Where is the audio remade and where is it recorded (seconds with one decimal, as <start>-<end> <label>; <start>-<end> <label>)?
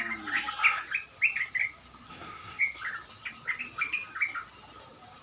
0.0-2.1 recorded; 2.1-2.6 remade; 2.6-5.2 recorded